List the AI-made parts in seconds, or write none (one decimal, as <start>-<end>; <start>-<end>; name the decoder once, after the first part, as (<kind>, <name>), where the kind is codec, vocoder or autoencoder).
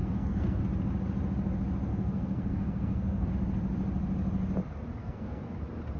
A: 0.0-0.6 (codec, SNAC); 1.9-3.3; 5.0-5.6